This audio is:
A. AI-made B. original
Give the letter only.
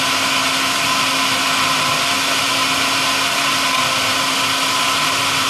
B